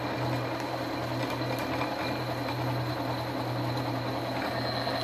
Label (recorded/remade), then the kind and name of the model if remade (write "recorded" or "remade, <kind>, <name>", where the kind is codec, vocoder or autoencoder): recorded